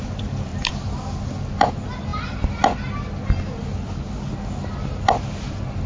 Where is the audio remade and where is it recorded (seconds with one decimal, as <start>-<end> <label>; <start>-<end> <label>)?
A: 0.0-5.9 recorded